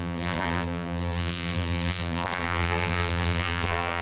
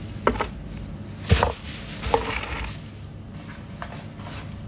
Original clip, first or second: second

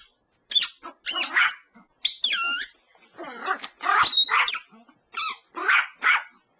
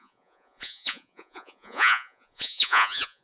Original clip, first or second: first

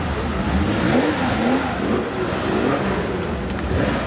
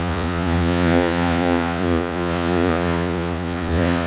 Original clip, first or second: first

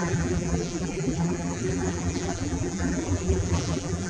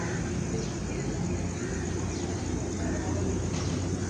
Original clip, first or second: second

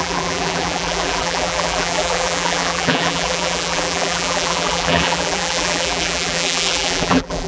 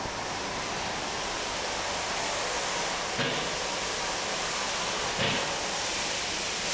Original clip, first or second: second